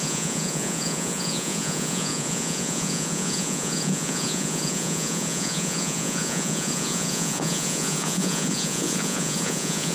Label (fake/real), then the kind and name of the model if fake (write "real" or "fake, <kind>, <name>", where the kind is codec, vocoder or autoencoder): fake, vocoder, Vocos